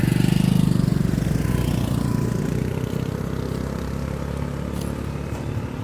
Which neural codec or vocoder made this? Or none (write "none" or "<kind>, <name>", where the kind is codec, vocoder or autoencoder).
none